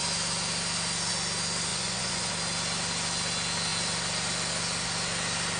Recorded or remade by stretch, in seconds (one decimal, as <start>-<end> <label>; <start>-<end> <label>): 0.0-1.7 recorded; 1.7-2.3 remade; 2.3-5.6 recorded